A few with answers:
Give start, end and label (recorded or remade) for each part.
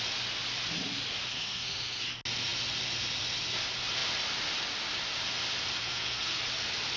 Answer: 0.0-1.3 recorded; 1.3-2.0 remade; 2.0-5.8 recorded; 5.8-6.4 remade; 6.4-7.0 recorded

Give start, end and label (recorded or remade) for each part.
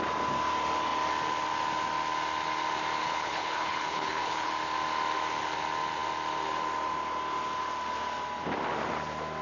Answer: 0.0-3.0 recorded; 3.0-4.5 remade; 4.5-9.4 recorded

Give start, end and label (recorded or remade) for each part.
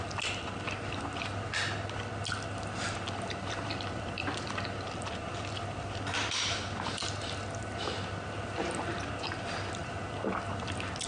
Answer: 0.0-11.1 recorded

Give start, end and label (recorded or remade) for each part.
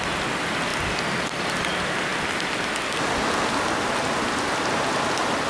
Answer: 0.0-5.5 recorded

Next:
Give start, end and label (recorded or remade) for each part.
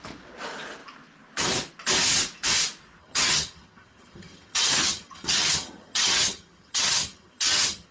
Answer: 0.0-3.0 recorded; 3.0-7.9 remade